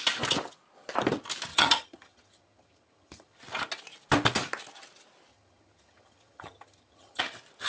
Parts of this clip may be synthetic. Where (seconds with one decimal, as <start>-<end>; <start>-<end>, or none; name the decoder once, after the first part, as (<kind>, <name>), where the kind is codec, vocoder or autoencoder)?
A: 1.5-3.4 (vocoder, HiFi-GAN); 5.3-7.2